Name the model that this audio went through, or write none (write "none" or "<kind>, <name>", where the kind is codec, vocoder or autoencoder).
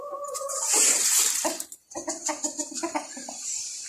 vocoder, BigVGAN v2